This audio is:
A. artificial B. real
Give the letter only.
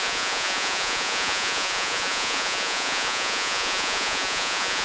A